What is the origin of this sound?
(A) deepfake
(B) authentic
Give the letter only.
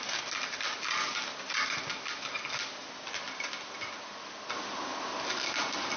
B